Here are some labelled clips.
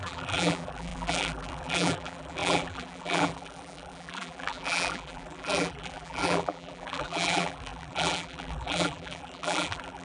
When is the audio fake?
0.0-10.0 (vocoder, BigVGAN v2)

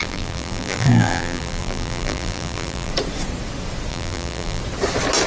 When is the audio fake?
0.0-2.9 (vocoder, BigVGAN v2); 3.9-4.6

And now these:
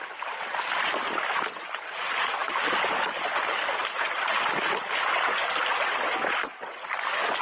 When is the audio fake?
3.8-5.6 (vocoder, BigVGAN v2)

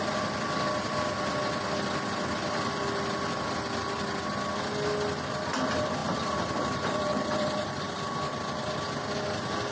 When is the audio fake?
6.0-7.8 (vocoder, BigVGAN v2)

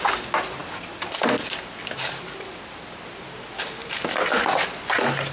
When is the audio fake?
none